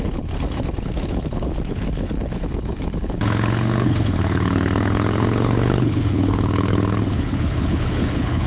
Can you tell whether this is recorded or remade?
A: remade